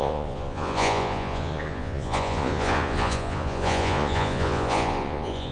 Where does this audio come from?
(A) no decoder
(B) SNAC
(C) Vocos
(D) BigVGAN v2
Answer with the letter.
C